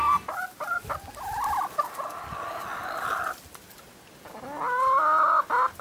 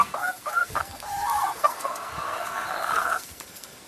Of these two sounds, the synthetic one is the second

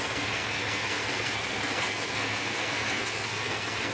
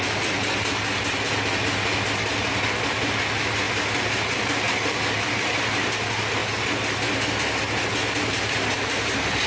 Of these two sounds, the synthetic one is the first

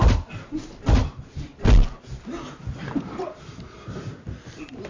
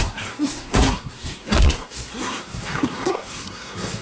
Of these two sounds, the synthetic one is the second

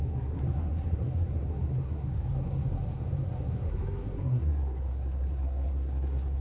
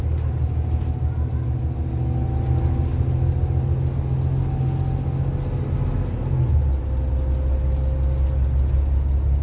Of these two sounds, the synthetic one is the first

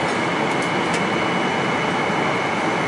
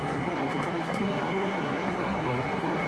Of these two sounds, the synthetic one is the second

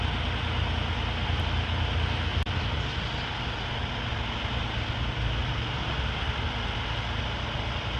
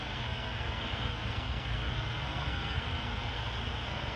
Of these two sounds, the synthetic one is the second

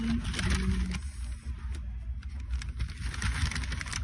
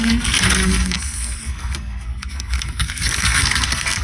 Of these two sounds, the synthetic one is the second